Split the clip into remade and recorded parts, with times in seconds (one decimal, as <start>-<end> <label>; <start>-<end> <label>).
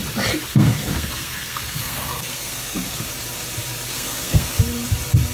0.0-0.5 recorded; 0.5-3.1 remade; 3.1-3.9 recorded; 3.9-4.6 remade; 4.6-5.3 recorded